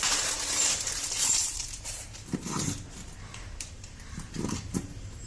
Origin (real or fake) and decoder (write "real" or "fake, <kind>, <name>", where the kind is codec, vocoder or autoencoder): fake, vocoder, BigVGAN v2